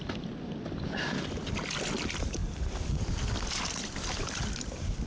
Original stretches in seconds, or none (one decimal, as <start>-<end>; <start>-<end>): 0.0-5.1